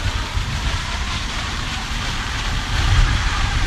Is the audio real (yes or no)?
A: no